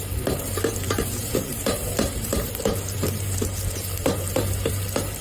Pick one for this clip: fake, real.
fake